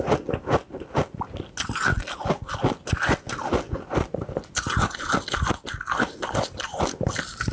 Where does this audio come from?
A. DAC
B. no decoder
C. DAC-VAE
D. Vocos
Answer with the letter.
B